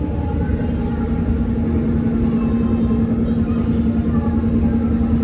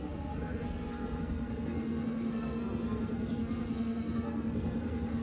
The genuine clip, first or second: first